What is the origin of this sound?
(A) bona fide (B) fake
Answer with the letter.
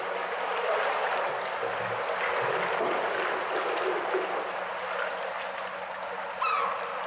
A